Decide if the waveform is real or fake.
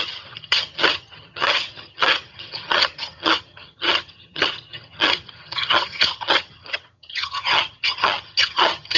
fake